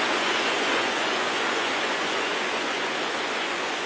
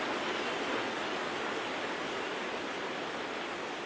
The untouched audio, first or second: second